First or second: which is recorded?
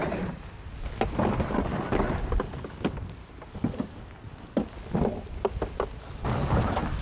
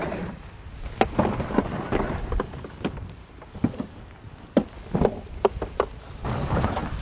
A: first